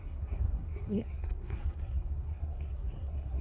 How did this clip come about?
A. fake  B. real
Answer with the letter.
A